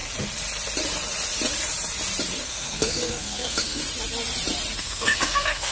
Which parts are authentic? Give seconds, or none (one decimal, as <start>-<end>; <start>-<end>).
0.0-2.4; 3.8-4.8